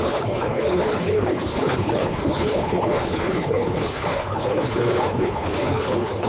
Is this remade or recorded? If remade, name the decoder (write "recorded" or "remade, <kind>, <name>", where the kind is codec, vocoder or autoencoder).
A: remade, codec, HILCodec